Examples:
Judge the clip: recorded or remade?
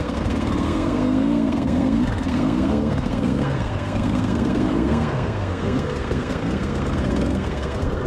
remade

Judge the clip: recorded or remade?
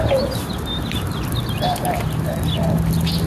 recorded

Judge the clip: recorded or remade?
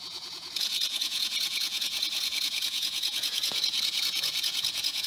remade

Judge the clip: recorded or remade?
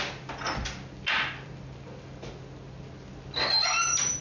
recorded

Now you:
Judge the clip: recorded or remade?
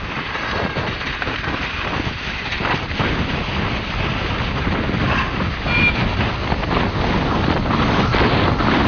recorded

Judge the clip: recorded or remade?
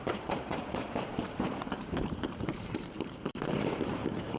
remade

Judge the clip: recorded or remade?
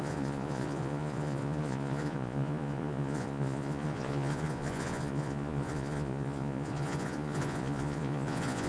remade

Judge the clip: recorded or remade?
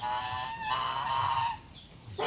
recorded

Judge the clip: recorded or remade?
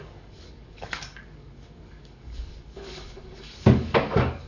remade